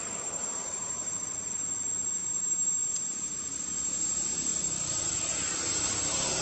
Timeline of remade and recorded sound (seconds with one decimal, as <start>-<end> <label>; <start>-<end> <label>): 0.0-1.2 remade; 1.2-2.2 recorded; 2.2-3.2 remade; 3.2-4.5 recorded; 4.5-5.4 remade; 5.4-6.4 recorded